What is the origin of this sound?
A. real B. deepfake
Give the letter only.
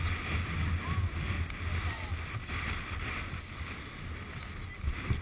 A